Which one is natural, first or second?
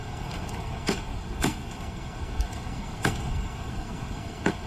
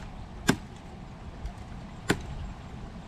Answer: second